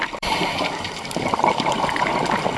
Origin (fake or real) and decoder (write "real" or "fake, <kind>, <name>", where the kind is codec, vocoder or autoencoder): fake, vocoder, BigVGAN v2